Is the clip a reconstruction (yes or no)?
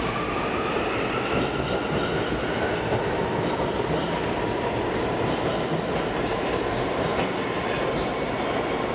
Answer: no